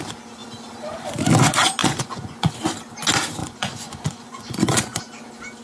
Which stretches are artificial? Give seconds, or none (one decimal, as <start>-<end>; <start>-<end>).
1.8-2.5; 3.4-5.0